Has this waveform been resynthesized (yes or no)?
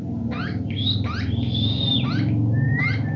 no